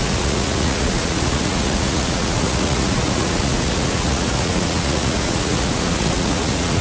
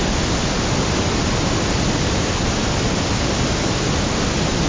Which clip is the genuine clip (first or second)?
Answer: second